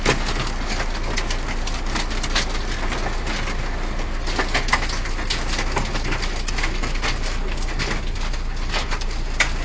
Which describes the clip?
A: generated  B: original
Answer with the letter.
B